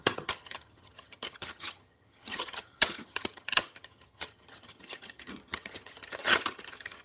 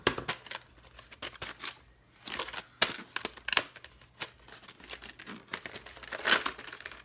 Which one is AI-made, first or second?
first